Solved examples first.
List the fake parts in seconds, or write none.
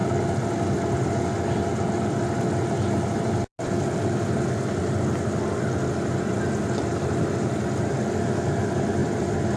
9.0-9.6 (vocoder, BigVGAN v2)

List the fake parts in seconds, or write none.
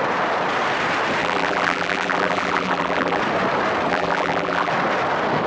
1.2-3.2 (vocoder, BigVGAN v2); 3.9-4.7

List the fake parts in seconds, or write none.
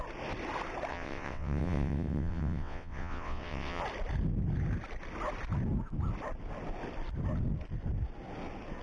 0.9-3.8 (vocoder, WaveNeXt)